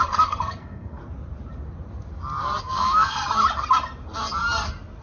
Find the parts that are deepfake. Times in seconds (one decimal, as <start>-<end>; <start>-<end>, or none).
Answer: 0.0-1.0; 2.6-3.2